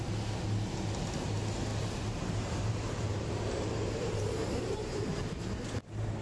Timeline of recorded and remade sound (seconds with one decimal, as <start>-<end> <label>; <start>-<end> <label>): 0.0-1.7 recorded; 1.7-5.4 remade; 5.4-6.2 recorded